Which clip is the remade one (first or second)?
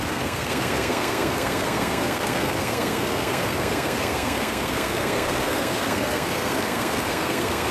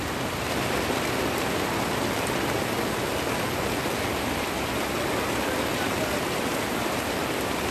first